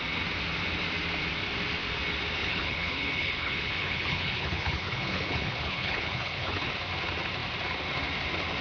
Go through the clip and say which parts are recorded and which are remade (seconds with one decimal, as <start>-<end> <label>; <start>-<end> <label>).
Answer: 0.0-2.4 recorded; 2.4-6.7 remade; 6.7-8.6 recorded